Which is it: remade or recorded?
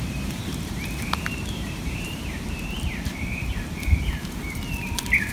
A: remade